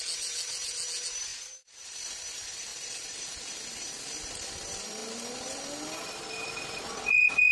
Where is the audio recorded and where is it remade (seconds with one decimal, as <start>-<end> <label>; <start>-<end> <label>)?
0.0-1.3 recorded; 1.3-2.1 remade; 2.1-2.7 recorded; 2.7-4.1 remade; 4.1-7.5 recorded